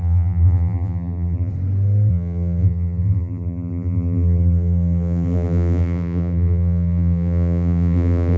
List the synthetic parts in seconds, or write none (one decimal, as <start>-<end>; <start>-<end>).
0.0-1.5; 2.1-8.4